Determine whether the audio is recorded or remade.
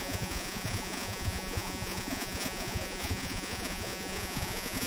remade